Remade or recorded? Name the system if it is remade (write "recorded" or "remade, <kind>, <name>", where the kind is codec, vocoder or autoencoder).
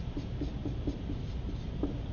recorded